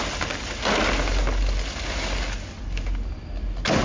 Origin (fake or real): real